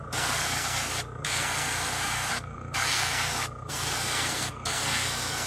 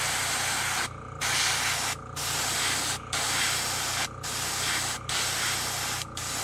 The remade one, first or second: first